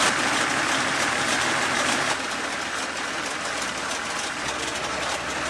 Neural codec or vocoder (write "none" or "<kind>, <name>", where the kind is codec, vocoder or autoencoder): none